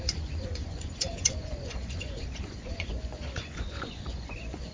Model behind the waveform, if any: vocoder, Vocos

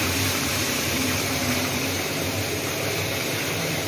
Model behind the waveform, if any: vocoder, BigVGAN v2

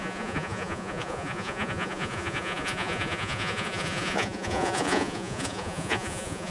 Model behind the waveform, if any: vocoder, Vocos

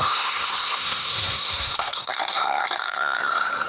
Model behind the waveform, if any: codec, SNAC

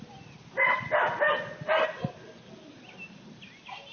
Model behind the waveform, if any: none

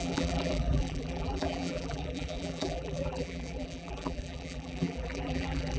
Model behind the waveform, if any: vocoder, BigVGAN v2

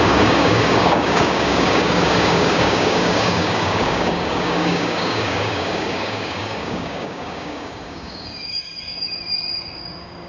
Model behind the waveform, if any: codec, DAC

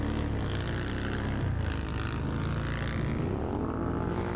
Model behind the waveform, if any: none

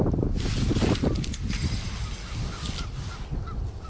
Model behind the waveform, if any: none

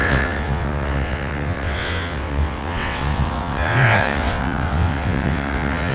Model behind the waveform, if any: vocoder, WaveNeXt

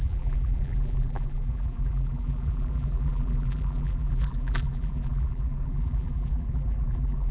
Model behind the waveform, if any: vocoder, BigVGAN v2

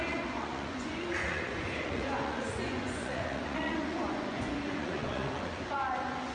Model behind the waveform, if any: vocoder, Vocos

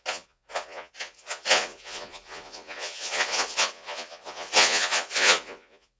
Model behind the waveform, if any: vocoder, Vocos